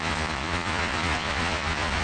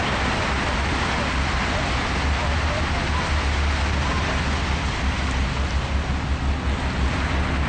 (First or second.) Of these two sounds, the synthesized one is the first